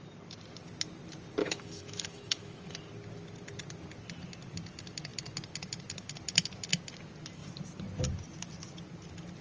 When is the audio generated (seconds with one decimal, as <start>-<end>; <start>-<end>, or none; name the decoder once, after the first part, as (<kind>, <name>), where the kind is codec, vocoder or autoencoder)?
1.4-2.7 (autoencoder, DAC-VAE)